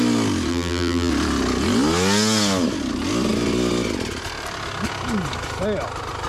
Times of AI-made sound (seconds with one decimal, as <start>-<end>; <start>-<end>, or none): 0.5-1.1